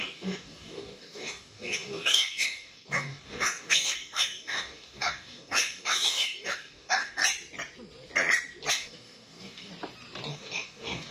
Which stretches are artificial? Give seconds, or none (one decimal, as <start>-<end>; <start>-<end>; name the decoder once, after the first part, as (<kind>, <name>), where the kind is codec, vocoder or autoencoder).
0.0-7.2 (codec, DAC); 8.7-9.7; 10.3-11.1